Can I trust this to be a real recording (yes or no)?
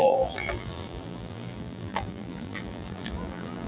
no